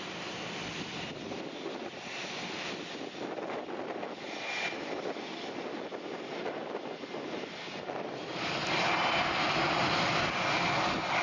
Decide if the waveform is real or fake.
fake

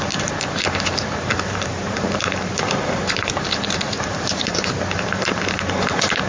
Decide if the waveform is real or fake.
fake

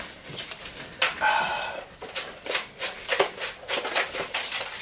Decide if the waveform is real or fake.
real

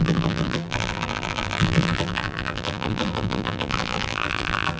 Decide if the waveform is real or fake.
fake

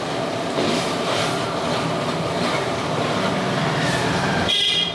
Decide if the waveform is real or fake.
fake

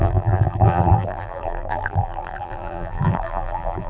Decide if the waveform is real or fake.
fake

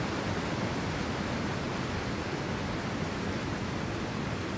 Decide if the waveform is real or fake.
real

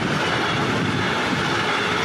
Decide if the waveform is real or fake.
real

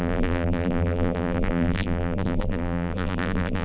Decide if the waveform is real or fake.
fake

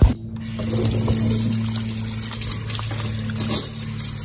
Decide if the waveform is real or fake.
real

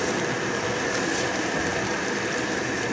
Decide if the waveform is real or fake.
fake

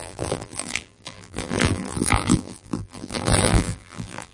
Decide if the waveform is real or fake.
fake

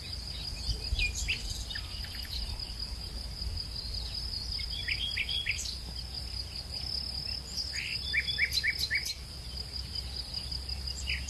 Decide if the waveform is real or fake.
real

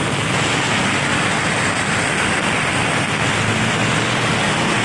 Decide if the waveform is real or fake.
real